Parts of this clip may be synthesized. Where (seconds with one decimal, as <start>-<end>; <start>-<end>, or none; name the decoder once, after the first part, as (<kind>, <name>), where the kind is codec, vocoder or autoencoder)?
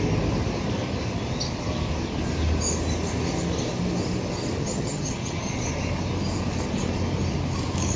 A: 4.6-5.5 (vocoder, HiFi-GAN)